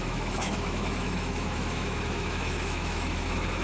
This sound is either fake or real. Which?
fake